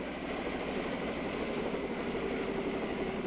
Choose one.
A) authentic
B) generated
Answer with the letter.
A